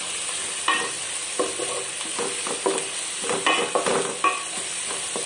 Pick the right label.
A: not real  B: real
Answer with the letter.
B